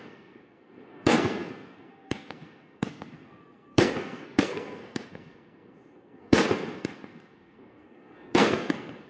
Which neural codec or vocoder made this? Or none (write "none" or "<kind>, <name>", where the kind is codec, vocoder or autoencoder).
codec, SNAC